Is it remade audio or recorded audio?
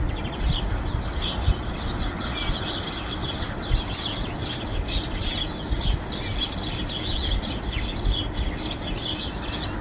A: recorded